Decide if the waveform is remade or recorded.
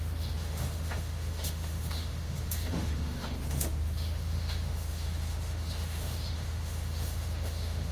remade